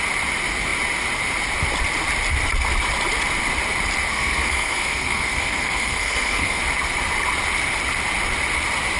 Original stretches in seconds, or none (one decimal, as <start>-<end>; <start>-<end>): 0.0-4.1; 6.6-9.0